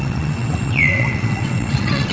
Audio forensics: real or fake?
fake